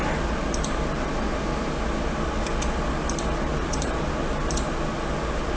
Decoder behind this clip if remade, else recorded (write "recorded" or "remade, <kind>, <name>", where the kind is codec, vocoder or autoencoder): recorded